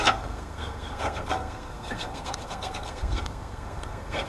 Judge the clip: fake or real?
fake